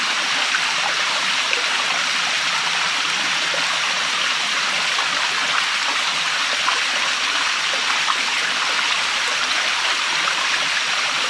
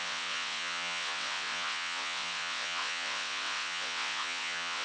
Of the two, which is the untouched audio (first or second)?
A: first